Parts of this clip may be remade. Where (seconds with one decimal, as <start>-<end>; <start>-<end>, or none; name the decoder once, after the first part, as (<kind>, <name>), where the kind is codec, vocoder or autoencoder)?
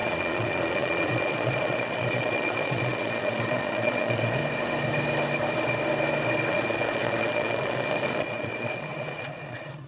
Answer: 0.0-4.4 (vocoder, Vocos); 6.5-9.9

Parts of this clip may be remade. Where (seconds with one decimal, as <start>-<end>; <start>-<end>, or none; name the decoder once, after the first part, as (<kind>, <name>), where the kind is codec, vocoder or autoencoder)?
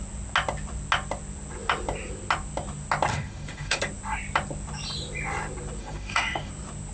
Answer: 3.1-3.8 (autoencoder, DAC-VAE); 5.8-6.5